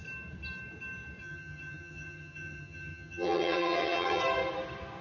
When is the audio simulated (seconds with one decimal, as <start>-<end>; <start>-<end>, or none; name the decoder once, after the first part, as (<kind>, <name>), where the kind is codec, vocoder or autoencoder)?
1.2-4.2 (vocoder, HiFi-GAN)